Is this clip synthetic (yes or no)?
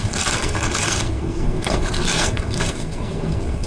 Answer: yes